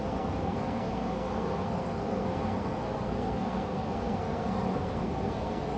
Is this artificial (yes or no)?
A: yes